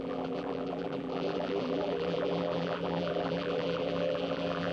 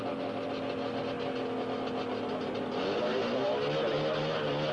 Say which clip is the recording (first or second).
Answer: second